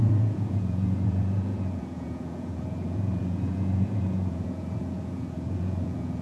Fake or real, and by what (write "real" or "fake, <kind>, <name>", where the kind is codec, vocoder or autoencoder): fake, vocoder, Vocos